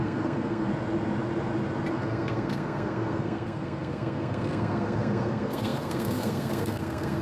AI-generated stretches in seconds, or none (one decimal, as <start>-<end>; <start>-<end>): 0.0-0.7; 1.9-7.2